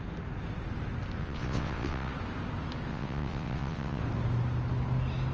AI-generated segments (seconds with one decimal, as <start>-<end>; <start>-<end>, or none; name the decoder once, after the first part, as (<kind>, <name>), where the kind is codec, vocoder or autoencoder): 1.2-2.1 (vocoder, WaveNeXt); 2.9-4.0